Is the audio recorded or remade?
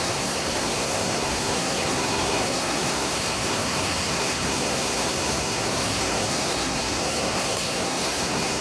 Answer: remade